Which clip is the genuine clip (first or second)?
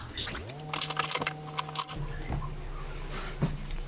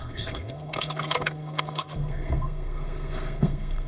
first